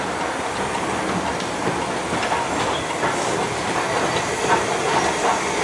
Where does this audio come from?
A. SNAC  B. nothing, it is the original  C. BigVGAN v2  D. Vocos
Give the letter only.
B